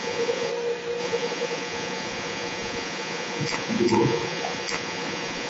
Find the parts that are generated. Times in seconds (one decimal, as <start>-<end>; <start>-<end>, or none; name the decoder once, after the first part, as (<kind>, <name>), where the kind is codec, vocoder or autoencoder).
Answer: 0.0-0.5 (vocoder, Vocos); 1.0-5.5